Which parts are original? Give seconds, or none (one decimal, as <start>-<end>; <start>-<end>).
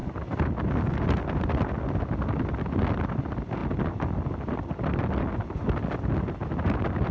0.0-7.1